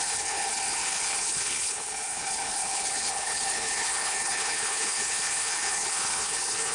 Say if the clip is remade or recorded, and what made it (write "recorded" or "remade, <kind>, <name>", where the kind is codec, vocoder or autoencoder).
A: remade, codec, HILCodec